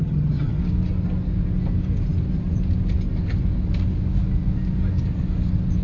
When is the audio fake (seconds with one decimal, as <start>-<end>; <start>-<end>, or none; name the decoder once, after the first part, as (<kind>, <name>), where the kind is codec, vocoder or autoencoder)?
0.0-0.6 (vocoder, HiFi-GAN)